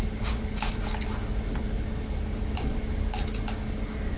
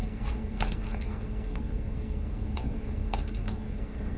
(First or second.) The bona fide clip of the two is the first